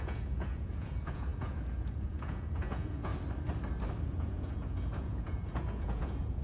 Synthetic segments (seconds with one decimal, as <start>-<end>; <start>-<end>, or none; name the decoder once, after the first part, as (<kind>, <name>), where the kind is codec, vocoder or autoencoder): 0.0-3.1 (vocoder, Vocos); 4.1-6.4